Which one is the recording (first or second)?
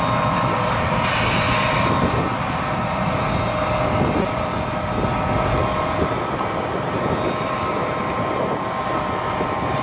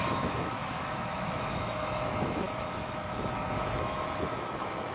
first